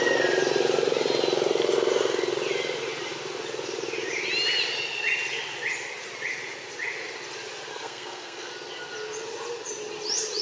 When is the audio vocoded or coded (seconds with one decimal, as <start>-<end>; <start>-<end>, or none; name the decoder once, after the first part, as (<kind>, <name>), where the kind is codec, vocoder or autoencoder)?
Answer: 7.7-8.5 (codec, SNAC)